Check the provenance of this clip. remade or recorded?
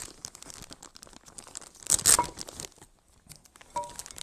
recorded